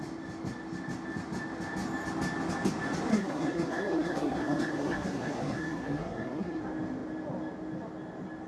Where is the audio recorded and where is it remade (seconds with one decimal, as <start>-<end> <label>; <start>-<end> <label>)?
0.0-3.1 recorded; 3.1-6.6 remade; 6.6-8.5 recorded